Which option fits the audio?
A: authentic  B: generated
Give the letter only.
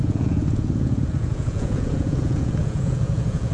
B